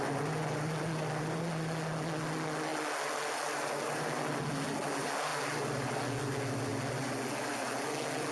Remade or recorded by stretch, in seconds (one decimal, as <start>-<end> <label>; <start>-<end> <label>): 0.0-8.3 recorded